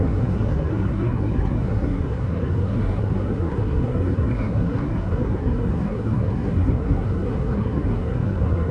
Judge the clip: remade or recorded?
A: remade